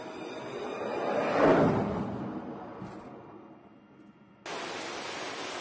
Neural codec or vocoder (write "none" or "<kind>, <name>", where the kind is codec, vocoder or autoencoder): none